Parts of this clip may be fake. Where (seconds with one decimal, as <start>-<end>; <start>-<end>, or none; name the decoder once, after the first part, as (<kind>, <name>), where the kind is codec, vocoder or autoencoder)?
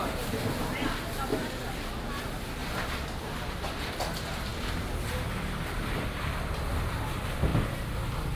2.6-3.7 (vocoder, BigVGAN v2)